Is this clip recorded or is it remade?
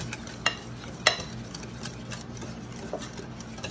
recorded